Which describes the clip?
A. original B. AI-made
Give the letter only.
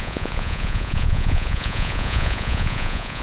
B